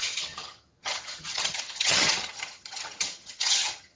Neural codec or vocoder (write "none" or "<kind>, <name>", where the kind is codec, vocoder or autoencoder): vocoder, HiFi-GAN